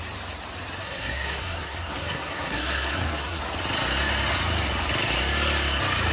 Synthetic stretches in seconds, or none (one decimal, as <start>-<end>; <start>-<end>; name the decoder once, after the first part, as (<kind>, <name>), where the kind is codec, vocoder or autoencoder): 0.8-3.4 (codec, SNAC)